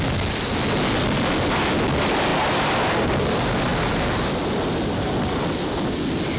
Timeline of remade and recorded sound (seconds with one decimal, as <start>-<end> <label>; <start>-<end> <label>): 0.0-6.4 recorded